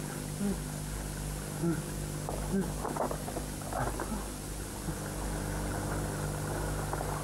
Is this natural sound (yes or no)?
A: yes